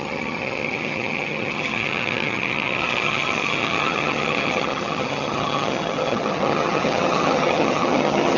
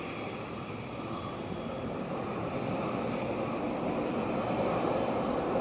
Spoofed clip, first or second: first